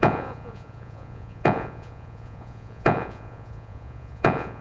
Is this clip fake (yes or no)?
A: yes